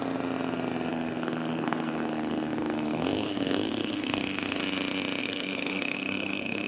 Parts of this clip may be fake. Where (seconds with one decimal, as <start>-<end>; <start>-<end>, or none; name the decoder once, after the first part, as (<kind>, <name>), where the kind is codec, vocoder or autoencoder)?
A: 0.9-4.6 (codec, SNAC); 5.2-6.7